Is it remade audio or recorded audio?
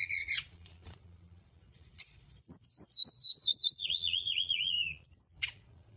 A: remade